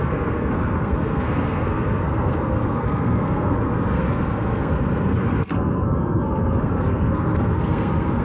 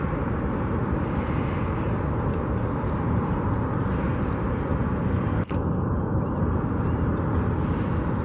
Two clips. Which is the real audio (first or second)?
second